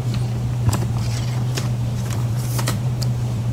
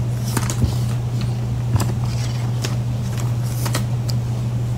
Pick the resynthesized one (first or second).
first